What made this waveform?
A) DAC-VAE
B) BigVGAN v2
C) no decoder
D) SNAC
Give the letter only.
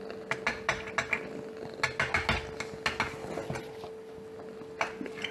C